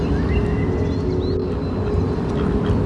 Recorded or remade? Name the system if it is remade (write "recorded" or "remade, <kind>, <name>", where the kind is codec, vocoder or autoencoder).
recorded